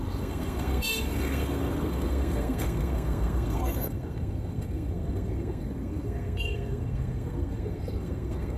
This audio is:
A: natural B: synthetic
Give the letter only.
B